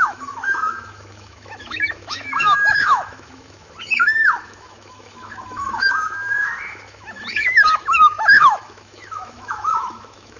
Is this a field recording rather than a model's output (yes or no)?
no